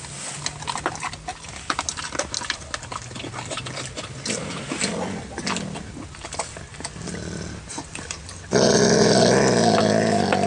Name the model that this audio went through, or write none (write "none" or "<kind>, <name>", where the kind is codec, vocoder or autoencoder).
none